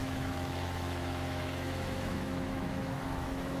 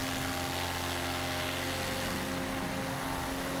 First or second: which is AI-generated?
first